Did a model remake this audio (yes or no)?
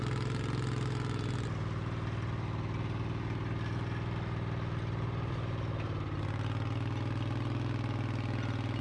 no